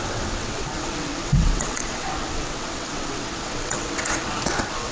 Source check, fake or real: fake